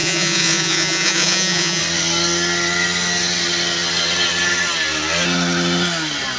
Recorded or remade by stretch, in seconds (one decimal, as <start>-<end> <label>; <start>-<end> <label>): 0.0-1.8 remade; 1.8-6.4 recorded